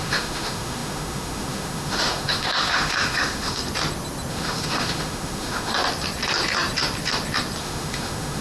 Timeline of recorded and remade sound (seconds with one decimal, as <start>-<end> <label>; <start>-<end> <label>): 0.0-3.6 remade; 3.6-4.3 recorded; 4.3-5.7 remade; 5.7-7.6 recorded; 7.6-8.4 remade